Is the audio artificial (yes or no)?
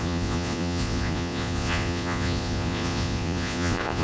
yes